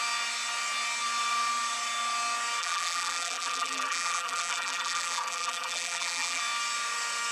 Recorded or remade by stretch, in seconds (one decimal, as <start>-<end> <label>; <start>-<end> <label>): 0.0-2.6 recorded; 2.6-6.4 remade; 6.4-7.3 recorded